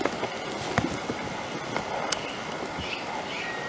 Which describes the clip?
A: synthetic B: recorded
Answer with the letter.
B